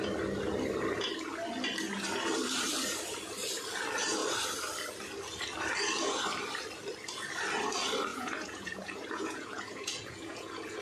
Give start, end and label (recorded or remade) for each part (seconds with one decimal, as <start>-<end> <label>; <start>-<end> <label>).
0.0-8.1 recorded; 8.1-10.8 remade